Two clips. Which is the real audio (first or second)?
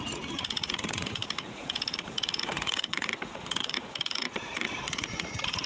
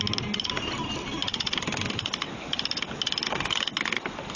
second